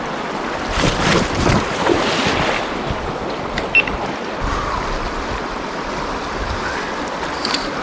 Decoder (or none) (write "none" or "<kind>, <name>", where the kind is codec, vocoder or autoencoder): none